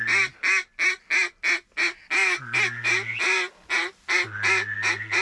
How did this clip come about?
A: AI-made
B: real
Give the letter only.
B